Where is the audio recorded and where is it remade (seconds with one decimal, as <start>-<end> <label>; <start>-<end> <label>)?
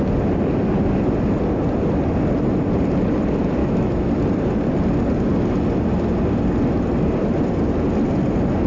0.0-3.6 recorded; 3.6-4.1 remade; 4.1-8.7 recorded